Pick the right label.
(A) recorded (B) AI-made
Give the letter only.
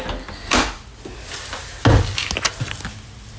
A